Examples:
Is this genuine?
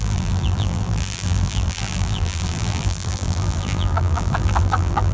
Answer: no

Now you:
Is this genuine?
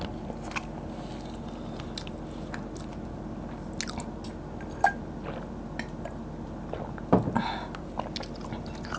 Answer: yes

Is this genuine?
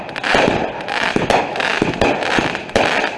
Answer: yes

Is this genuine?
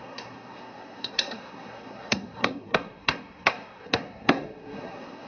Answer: no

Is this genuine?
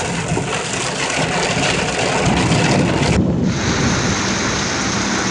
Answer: yes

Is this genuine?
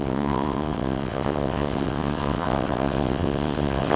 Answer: no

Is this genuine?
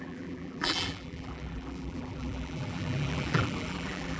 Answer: no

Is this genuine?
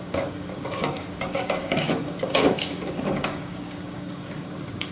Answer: no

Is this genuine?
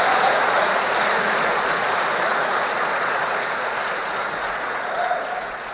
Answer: no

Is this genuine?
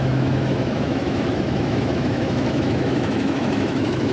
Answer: no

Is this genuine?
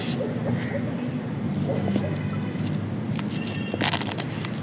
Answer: yes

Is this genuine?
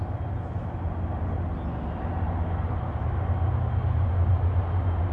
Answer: yes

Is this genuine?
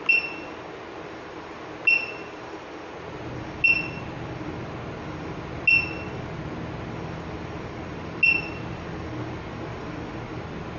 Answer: yes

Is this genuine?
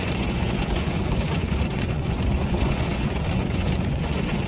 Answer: no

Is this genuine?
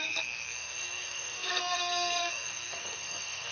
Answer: no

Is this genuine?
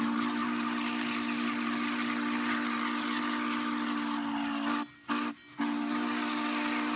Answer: yes